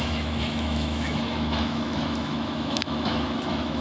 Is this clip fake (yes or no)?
yes